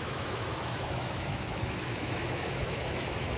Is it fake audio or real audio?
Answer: fake